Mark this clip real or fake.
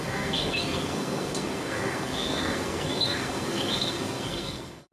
fake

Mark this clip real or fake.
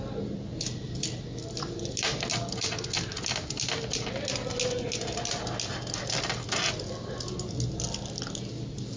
real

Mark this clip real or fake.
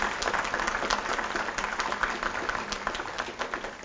real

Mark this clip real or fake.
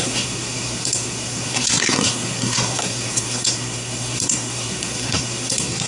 fake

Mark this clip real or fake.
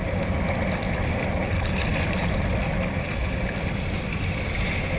real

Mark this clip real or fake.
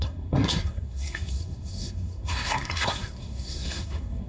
fake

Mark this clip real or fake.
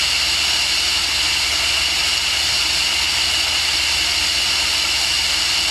real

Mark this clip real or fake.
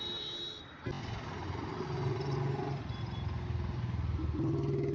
real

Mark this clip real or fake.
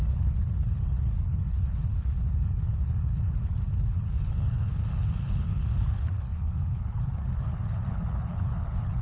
fake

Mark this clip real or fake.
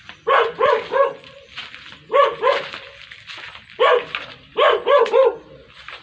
real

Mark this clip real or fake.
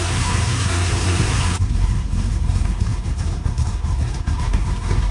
fake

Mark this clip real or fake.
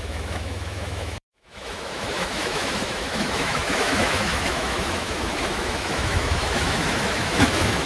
fake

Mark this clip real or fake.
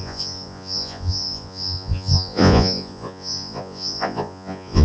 fake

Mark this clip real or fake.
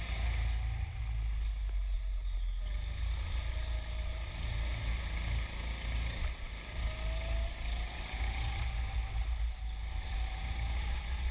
real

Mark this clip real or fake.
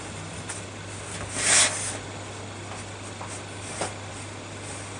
real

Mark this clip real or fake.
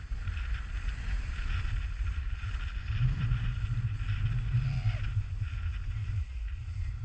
real